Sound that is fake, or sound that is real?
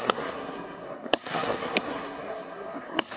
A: fake